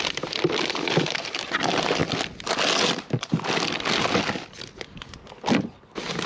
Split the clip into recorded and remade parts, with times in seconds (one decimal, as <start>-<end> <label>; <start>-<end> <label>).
0.0-6.3 recorded